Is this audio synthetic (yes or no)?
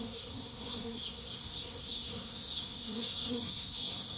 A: yes